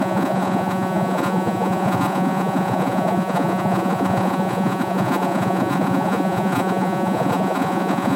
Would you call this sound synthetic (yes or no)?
yes